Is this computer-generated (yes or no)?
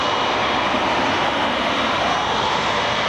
no